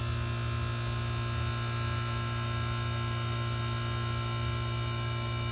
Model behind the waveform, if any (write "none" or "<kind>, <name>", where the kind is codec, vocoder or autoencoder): none